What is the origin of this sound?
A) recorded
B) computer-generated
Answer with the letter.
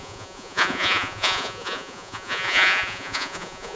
B